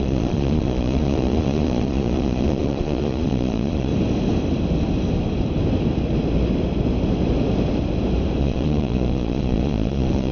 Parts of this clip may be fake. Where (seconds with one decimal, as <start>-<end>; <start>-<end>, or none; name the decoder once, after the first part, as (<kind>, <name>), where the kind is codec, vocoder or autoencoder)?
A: 0.0-3.9 (vocoder, Vocos); 8.4-10.3